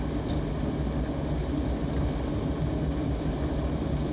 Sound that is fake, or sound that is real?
real